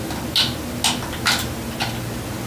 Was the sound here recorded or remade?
recorded